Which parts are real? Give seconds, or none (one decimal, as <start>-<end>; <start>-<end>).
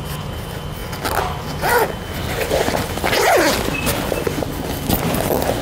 0.0-5.6